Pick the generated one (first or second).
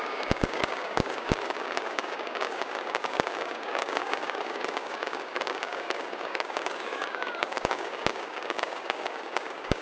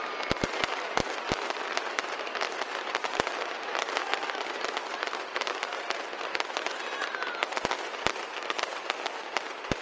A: first